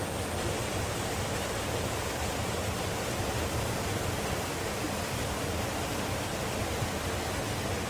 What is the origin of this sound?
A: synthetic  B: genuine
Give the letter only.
B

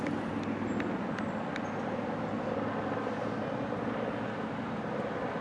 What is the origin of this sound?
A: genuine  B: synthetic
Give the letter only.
A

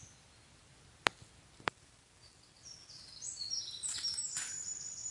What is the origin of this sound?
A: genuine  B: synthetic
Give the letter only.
A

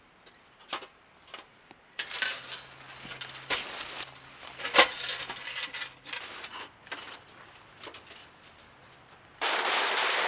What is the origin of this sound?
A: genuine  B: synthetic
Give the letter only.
A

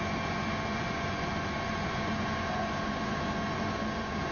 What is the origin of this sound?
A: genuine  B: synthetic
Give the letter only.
B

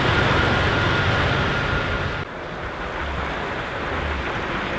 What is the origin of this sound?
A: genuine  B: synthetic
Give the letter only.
A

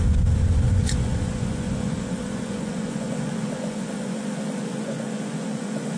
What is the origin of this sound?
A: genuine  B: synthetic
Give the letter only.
B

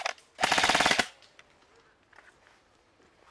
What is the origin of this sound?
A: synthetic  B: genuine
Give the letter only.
B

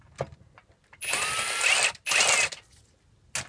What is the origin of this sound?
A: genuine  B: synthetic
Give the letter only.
A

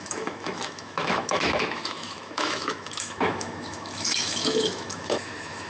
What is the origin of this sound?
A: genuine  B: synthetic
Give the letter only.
B